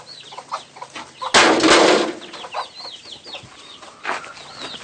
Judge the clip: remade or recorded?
recorded